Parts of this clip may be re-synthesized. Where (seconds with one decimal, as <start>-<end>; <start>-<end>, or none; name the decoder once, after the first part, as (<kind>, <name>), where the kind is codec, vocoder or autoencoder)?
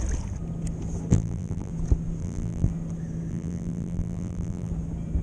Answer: 1.1-1.7 (vocoder, BigVGAN v2); 2.2-2.7; 3.3-4.7